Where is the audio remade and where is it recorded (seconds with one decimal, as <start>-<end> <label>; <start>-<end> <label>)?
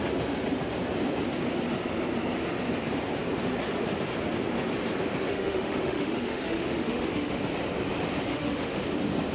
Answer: 0.0-5.3 recorded; 5.3-7.4 remade; 7.4-8.3 recorded; 8.3-8.8 remade; 8.8-9.3 recorded